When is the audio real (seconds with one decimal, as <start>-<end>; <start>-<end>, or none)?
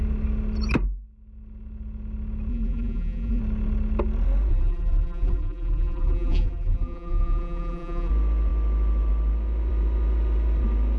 0.0-2.5; 3.4-4.5; 8.1-11.0